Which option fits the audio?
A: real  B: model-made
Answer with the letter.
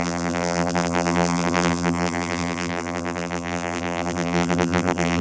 B